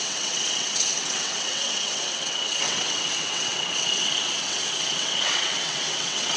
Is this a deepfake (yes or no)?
yes